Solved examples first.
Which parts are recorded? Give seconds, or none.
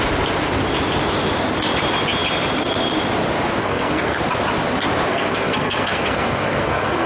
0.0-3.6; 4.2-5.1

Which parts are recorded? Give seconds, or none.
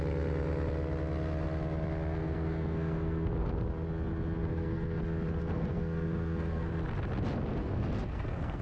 0.0-2.2; 3.3-4.4; 5.0-5.4; 6.7-7.6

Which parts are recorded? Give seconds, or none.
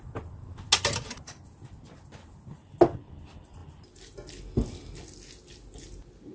0.0-6.3